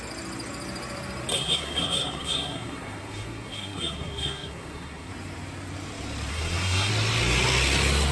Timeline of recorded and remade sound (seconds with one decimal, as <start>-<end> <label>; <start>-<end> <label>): 0.0-1.3 recorded; 1.3-5.1 remade; 5.1-6.3 recorded; 6.3-6.9 remade; 6.9-8.1 recorded